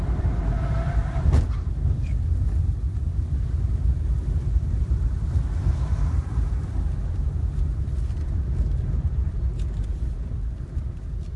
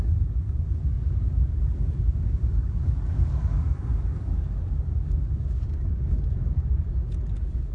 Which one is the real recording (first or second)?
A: first